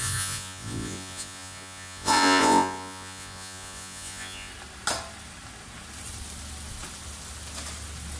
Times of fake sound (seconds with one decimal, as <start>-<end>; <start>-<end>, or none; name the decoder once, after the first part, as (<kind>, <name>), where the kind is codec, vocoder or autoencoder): 0.0-4.5 (vocoder, Vocos)